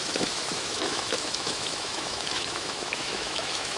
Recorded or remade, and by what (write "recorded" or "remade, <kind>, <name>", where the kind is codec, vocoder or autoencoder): remade, autoencoder, DAC-VAE